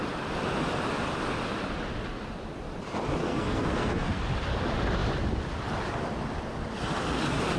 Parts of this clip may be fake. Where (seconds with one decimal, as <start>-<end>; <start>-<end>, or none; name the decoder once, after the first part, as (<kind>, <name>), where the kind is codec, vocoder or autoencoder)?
3.2-4.2 (codec, SNAC)